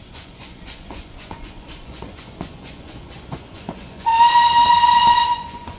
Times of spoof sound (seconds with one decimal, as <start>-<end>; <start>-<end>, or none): 0.0-4.1; 4.7-5.8